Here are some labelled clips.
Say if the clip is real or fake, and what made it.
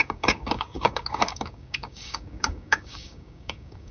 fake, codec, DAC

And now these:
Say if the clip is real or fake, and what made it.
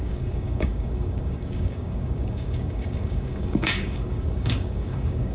fake, codec, DAC